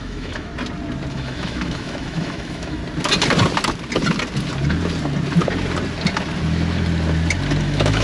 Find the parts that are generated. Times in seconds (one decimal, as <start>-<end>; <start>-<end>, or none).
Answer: 0.0-0.5; 1.1-2.8; 7.6-8.0